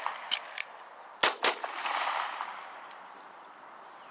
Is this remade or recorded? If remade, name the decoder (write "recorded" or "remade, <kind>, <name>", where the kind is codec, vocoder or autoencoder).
recorded